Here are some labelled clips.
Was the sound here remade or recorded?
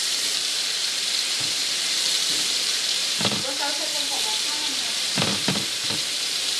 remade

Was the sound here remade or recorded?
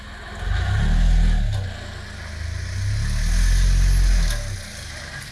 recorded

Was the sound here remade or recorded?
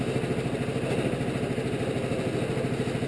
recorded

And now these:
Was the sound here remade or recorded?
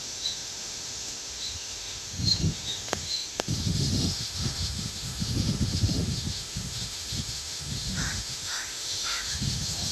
remade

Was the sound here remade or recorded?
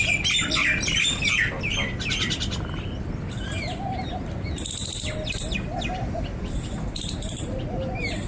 recorded